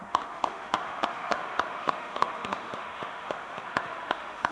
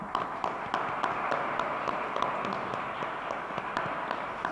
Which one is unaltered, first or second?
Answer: second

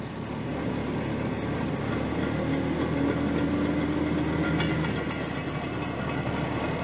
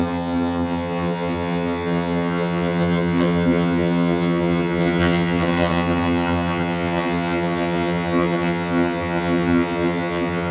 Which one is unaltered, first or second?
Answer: first